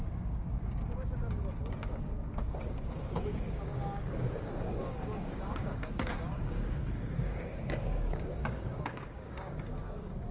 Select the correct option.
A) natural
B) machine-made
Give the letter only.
B